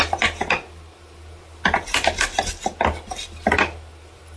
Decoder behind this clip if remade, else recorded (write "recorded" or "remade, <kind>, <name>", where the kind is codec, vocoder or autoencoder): recorded